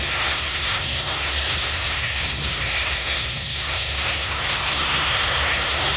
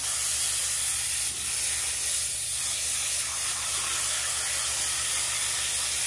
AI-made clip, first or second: first